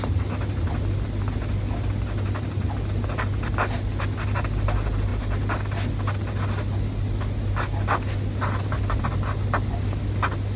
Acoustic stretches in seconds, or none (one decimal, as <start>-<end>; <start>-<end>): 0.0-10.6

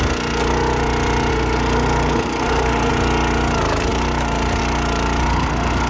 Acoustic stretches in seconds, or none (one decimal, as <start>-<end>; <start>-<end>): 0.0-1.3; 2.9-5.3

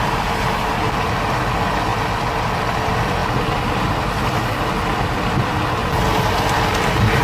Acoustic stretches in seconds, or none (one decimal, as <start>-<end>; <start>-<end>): 0.0-7.2